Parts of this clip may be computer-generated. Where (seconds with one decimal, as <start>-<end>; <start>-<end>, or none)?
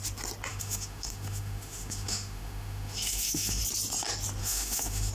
0.5-3.6; 4.4-5.1